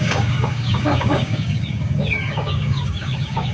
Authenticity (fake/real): fake